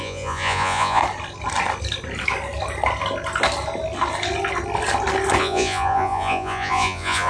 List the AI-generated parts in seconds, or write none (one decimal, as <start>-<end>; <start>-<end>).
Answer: 0.0-1.0; 5.4-7.3

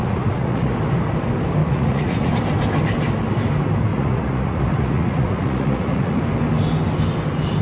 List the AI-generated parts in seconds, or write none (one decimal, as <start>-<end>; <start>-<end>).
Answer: 0.0-0.7; 1.6-2.3; 3.9-6.2